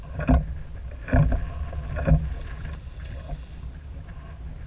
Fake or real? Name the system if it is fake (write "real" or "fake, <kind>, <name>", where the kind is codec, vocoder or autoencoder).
real